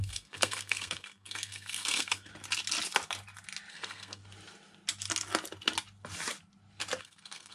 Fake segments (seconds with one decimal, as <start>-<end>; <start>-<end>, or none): 0.0-2.3; 3.7-4.2; 7.0-7.5